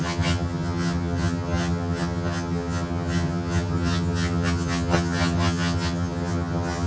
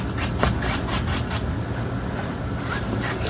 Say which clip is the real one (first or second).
second